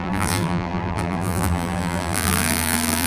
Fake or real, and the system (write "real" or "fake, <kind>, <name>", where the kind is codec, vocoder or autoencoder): fake, vocoder, BigVGAN v2